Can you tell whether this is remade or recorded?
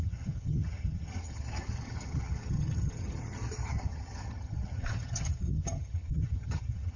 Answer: remade